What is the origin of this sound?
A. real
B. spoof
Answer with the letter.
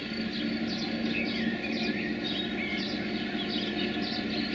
A